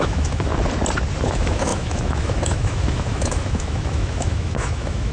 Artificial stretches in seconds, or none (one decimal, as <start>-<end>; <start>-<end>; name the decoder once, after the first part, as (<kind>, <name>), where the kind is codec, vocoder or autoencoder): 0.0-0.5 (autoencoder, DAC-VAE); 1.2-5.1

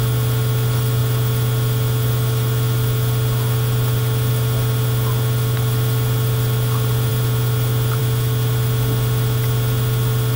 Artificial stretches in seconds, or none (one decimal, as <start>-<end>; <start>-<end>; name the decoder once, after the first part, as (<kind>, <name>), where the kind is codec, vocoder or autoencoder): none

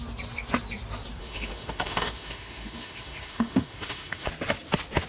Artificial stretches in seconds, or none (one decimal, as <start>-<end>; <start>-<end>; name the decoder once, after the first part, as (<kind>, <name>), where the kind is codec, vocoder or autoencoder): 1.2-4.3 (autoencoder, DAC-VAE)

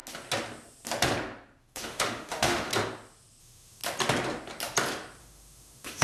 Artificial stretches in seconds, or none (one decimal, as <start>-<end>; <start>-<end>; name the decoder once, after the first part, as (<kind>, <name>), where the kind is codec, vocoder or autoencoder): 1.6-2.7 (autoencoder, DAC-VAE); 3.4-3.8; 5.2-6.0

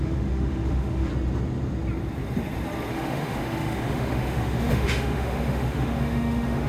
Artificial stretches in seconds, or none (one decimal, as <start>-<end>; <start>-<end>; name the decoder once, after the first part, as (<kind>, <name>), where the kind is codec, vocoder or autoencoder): 0.0-1.1 (autoencoder, DAC-VAE); 2.9-6.7